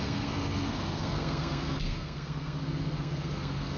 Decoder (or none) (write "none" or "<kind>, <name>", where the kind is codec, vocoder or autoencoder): codec, SNAC